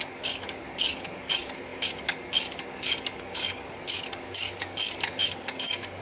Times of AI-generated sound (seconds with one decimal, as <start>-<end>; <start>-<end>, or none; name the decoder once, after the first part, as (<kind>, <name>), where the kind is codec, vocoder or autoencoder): 0.0-6.0 (codec, DAC)